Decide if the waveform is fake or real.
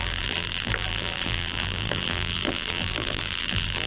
fake